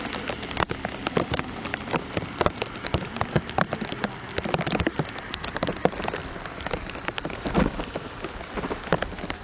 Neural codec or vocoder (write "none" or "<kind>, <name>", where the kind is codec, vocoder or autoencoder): none